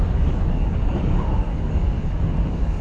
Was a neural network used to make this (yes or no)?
yes